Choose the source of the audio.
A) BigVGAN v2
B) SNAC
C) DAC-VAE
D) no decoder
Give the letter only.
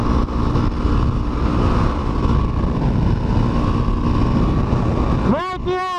D